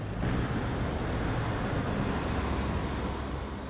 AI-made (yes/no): no